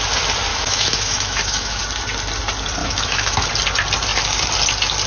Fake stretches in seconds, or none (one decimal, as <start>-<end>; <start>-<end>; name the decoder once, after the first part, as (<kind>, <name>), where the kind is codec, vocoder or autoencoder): 0.5-1.8 (autoencoder, DAC-VAE); 2.8-3.5